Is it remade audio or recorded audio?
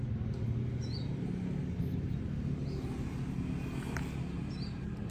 recorded